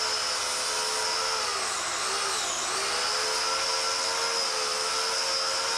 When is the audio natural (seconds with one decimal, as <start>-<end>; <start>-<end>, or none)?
0.0-5.8